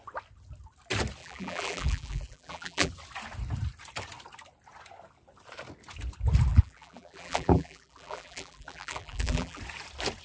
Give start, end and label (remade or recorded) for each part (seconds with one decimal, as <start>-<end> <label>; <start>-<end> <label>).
0.0-1.2 recorded; 1.2-2.9 remade; 2.9-6.5 recorded; 6.5-9.6 remade; 9.6-10.2 recorded